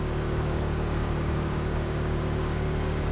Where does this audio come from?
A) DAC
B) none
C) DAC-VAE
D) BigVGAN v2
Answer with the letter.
A